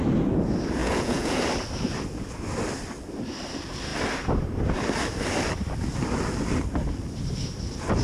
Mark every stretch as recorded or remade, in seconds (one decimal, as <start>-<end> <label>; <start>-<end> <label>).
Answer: 0.0-0.8 recorded; 0.8-1.4 remade; 1.4-8.0 recorded